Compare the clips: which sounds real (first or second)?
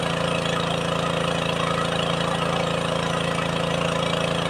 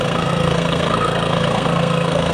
first